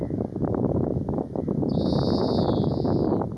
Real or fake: real